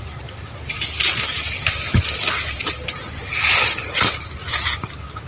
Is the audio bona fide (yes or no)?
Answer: yes